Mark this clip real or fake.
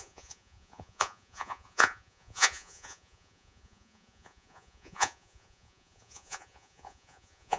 fake